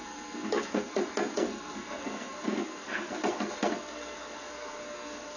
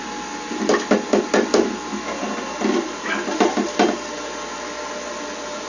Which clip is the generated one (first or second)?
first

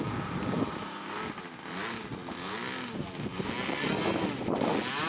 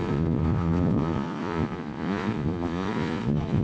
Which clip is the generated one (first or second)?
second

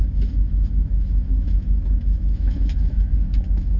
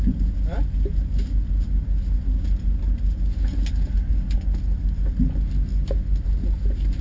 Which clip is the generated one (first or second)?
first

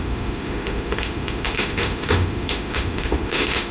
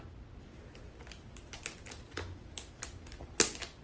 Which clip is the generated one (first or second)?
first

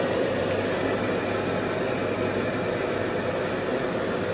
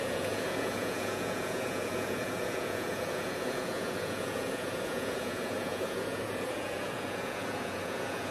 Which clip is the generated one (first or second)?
second